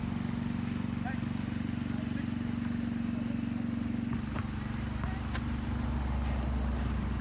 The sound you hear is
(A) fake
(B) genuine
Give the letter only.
B